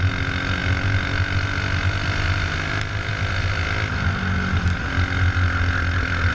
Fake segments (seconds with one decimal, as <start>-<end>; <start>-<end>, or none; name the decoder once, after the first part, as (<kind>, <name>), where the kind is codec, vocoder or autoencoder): none